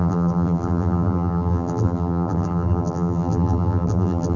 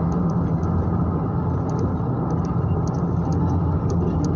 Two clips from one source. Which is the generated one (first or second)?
first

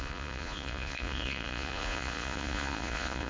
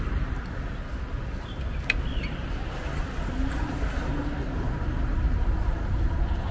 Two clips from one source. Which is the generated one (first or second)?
first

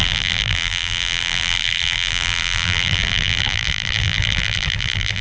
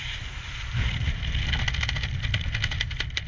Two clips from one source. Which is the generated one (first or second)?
first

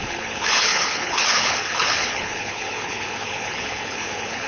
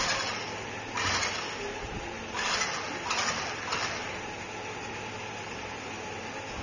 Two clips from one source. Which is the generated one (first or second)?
first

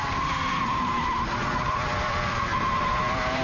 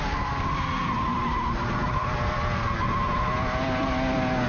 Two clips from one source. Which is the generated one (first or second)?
first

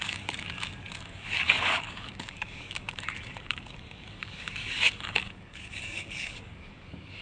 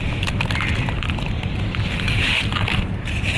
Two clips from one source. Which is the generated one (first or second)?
first